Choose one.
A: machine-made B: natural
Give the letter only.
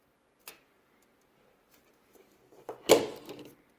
B